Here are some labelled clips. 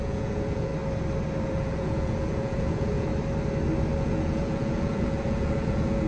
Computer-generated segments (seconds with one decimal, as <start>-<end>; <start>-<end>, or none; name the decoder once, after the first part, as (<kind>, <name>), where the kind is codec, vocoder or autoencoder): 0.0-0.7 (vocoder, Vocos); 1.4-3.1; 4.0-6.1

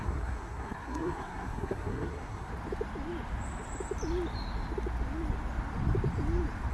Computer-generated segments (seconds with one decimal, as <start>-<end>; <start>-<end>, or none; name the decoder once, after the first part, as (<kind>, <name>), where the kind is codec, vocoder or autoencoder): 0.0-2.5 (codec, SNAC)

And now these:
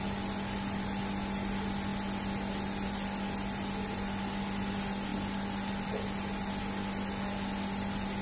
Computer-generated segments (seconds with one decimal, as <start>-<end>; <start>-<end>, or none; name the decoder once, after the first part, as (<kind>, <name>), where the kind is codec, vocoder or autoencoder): none

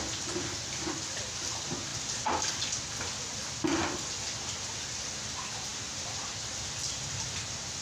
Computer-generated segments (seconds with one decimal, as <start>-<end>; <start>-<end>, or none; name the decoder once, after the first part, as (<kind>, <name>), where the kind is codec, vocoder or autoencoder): none

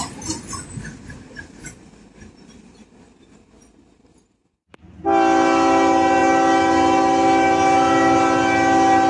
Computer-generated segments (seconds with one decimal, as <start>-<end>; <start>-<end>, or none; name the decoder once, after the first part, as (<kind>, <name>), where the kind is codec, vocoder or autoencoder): none

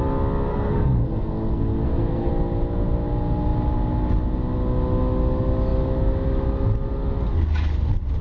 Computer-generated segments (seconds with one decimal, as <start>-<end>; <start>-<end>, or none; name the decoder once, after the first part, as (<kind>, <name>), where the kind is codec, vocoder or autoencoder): 0.5-2.3 (codec, SNAC)

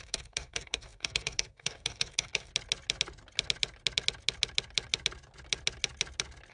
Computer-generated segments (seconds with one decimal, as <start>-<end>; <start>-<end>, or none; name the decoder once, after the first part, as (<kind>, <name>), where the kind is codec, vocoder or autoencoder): 0.0-2.5 (codec, DAC)

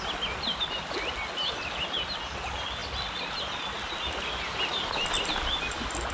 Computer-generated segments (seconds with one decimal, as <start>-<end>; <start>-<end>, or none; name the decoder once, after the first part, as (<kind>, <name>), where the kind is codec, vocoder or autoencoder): none